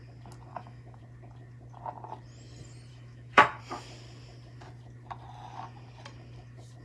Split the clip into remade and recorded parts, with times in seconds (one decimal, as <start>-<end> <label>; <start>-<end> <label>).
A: 0.0-0.5 recorded; 0.5-1.0 remade; 1.0-2.9 recorded; 2.9-3.6 remade; 3.6-6.8 recorded